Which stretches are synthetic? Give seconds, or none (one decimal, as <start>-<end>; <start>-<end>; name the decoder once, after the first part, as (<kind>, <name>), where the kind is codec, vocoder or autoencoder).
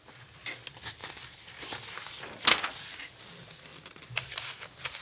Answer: none